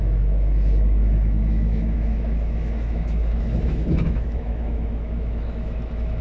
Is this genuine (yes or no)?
no